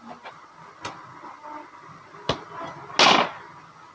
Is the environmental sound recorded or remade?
recorded